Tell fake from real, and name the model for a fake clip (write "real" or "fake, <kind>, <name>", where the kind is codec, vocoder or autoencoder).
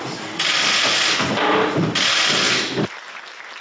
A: real